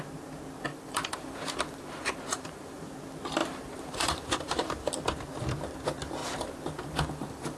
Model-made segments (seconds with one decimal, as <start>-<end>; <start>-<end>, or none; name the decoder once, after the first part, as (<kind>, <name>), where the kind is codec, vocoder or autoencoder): 0.7-2.8 (vocoder, BigVGAN v2); 3.4-4.9; 6.2-7.6